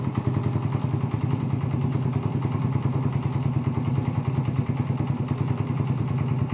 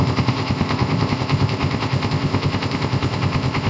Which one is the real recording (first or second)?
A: first